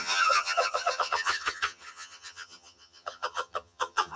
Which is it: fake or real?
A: fake